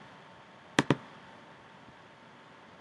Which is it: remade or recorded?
recorded